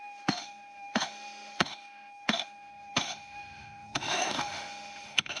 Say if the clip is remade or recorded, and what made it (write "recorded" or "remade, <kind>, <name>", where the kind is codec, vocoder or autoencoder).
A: remade, autoencoder, DAC-VAE